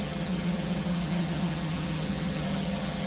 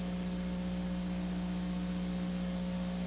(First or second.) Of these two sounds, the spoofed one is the first